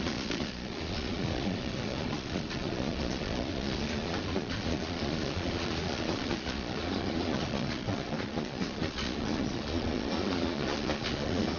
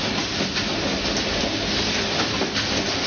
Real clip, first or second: second